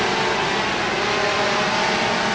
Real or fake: real